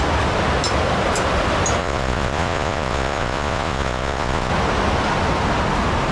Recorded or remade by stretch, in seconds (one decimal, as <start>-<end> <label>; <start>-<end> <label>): 0.0-1.8 recorded; 1.8-4.5 remade; 4.5-6.1 recorded

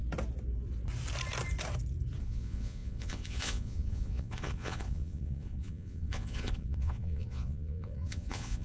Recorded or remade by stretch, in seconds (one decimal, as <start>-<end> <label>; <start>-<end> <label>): 0.0-2.2 recorded; 2.2-8.6 remade